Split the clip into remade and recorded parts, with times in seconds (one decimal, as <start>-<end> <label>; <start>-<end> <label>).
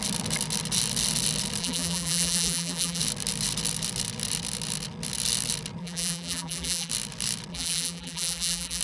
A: 0.0-1.6 recorded; 1.6-3.0 remade; 3.0-5.8 recorded; 5.8-6.9 remade; 6.9-7.5 recorded; 7.5-8.8 remade